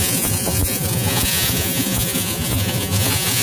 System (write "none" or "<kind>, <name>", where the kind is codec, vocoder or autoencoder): vocoder, Vocos